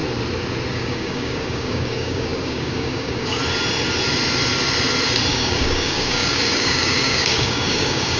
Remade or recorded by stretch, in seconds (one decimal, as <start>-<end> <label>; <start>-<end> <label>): 0.0-0.7 recorded; 0.7-3.4 remade; 3.4-5.3 recorded; 5.3-8.2 remade